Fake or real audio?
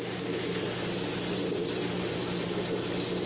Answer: real